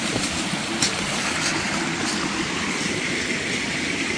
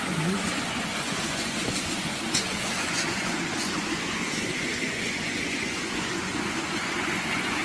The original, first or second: first